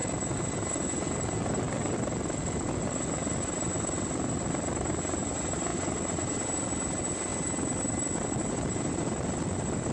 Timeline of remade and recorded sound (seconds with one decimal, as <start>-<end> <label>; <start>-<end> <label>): 0.0-9.9 recorded